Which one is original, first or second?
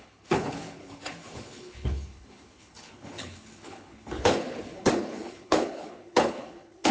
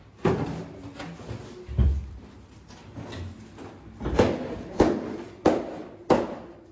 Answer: second